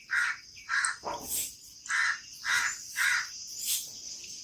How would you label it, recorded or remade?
recorded